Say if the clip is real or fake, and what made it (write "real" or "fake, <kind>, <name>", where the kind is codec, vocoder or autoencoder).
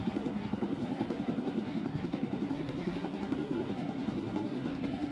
fake, codec, SNAC